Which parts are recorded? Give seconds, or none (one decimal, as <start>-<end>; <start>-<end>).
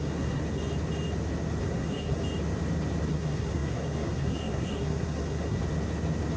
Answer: 0.4-1.6; 2.2-3.1; 5.6-6.4